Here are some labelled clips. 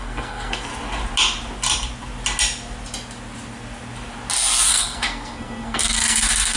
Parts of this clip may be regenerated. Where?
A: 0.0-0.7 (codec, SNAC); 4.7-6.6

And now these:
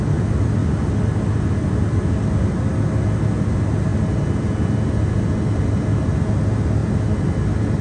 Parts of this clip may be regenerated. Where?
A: none

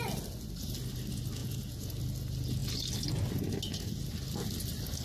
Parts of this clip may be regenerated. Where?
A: 1.4-1.9 (vocoder, Vocos)

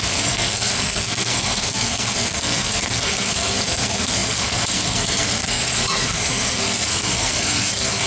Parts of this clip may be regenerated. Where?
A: 0.0-8.1 (codec, SNAC)

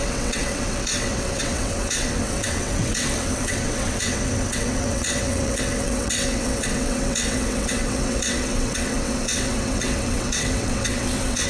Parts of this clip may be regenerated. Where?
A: 0.0-11.5 (vocoder, WaveNeXt)

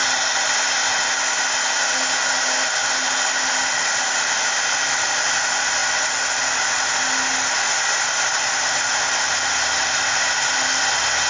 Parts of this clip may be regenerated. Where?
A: none

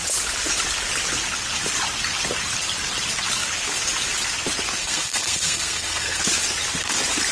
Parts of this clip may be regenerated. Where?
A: 4.8-6.2 (codec, SNAC)